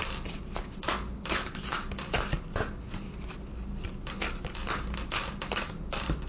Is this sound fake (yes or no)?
no